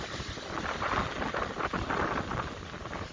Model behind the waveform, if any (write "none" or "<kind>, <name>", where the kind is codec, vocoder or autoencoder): none